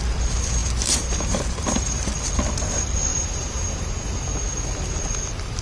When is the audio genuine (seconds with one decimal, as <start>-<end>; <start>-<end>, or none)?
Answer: 0.0-0.6; 2.1-3.1; 4.2-5.6